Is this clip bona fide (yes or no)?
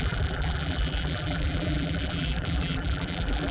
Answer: no